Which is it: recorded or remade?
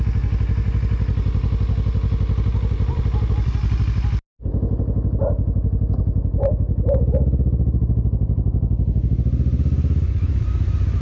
recorded